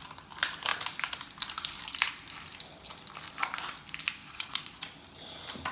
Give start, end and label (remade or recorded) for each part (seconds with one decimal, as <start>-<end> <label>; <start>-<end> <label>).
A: 0.0-4.2 recorded; 4.2-4.8 remade; 4.8-5.7 recorded